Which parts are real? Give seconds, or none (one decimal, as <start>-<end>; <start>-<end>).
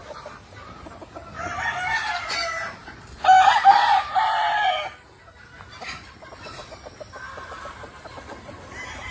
0.0-9.1